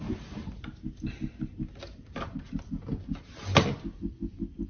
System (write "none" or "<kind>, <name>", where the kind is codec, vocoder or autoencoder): none